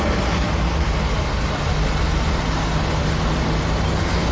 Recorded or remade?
recorded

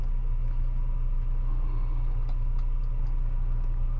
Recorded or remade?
recorded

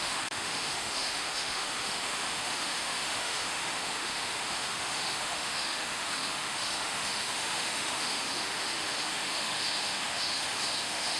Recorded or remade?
remade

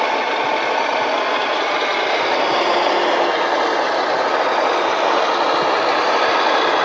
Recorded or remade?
recorded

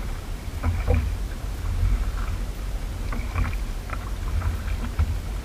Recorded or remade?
recorded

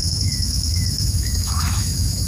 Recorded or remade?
remade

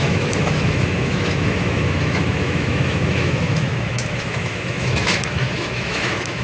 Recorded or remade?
remade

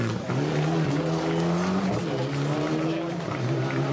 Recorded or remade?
recorded